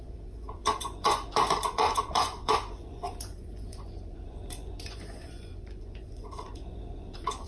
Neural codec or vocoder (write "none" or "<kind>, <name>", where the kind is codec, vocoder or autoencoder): vocoder, Vocos